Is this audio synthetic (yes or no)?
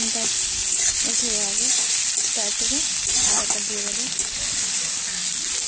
no